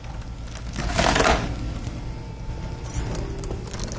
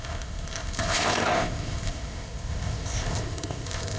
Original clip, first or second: first